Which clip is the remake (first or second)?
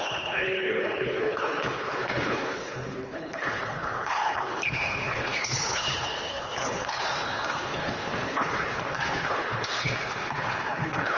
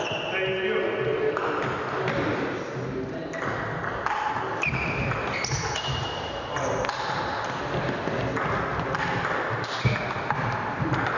first